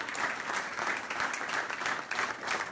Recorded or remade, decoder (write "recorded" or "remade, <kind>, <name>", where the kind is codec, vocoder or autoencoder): recorded